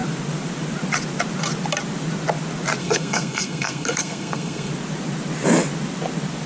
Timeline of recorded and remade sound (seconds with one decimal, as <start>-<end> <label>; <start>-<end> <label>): 0.0-2.8 recorded; 2.8-4.7 remade; 4.7-6.5 recorded